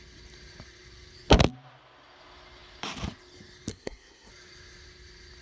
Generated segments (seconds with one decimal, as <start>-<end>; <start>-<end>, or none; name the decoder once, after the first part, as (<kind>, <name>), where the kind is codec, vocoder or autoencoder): 3.7-4.3 (codec, SNAC)